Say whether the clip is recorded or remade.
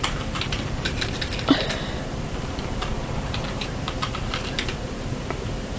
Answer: remade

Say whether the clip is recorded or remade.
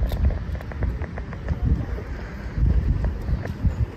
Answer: recorded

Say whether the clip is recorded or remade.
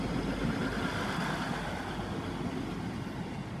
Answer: recorded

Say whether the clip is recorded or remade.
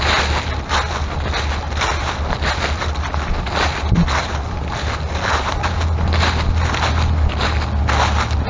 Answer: recorded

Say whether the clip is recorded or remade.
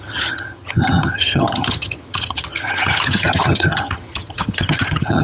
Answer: remade